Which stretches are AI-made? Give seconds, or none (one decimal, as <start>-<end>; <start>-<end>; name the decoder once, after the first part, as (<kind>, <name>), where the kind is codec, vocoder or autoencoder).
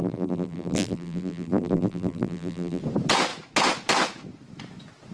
0.0-2.8 (vocoder, BigVGAN v2)